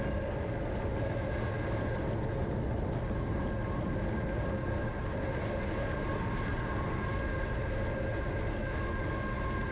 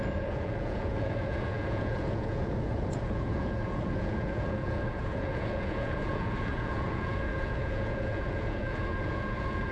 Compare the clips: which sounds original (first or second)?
first